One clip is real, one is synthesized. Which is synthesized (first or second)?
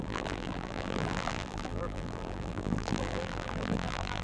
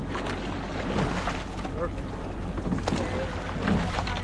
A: first